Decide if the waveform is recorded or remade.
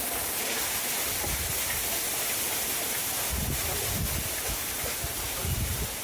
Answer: recorded